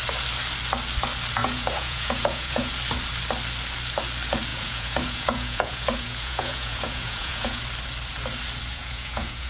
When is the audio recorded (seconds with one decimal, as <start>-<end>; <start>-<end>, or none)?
0.0-1.4; 2.7-4.5; 7.6-8.7